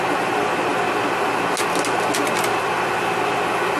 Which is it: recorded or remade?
recorded